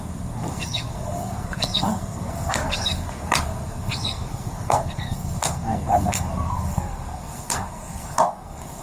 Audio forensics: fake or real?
fake